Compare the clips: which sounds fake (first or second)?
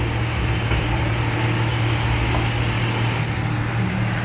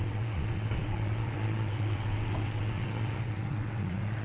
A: second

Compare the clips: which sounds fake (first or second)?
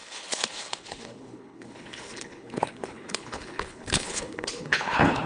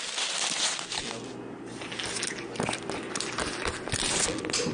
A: first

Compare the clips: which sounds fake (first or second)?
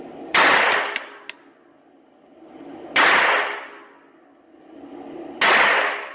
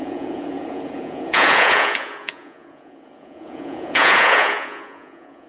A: second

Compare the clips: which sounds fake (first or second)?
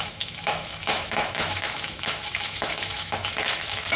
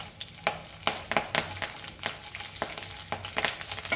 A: first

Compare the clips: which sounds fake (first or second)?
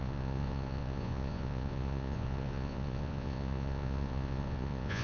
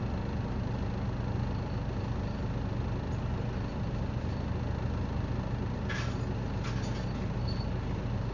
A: first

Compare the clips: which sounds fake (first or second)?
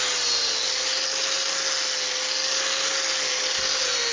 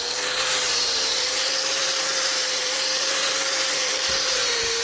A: second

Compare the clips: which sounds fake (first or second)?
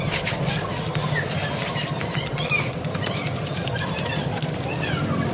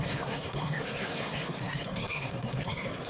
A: second